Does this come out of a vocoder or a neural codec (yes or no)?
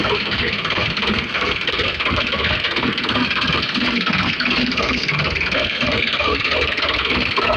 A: yes